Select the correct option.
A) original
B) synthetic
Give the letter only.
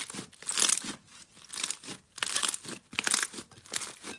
A